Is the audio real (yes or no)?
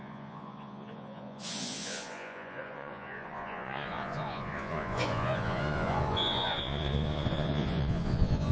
no